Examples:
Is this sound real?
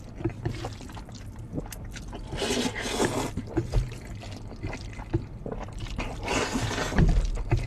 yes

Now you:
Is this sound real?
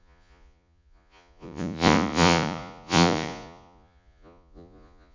no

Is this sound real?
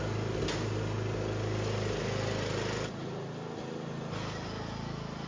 yes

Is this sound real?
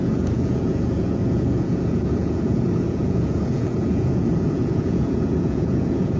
no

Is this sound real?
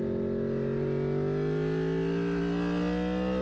yes